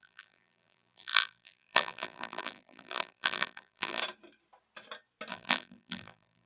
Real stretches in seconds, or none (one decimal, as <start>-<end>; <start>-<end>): 4.0-5.3